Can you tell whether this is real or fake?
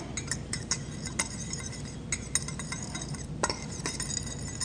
real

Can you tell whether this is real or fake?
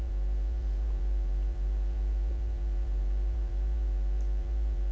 fake